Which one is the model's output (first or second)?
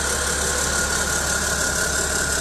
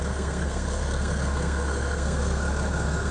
second